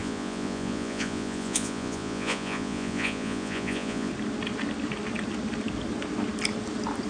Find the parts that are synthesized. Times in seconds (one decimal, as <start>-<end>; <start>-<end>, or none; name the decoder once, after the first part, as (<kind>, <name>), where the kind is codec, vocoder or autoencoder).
0.0-4.1 (vocoder, Vocos)